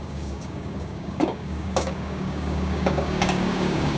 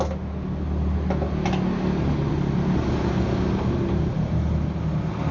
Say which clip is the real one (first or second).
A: second